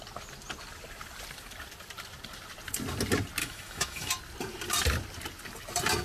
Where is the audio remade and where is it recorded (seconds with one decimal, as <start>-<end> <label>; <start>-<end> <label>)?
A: 0.0-3.4 recorded; 3.4-4.1 remade; 4.1-6.0 recorded